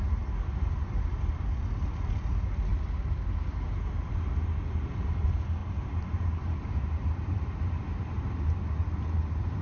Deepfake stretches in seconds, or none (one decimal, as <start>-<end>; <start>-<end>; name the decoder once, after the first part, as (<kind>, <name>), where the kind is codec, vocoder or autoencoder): 5.6-8.6 (vocoder, BigVGAN v2)